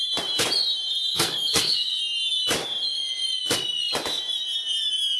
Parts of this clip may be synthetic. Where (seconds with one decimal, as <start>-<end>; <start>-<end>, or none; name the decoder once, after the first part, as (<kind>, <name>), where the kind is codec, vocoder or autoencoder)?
1.1-2.0 (codec, SNAC)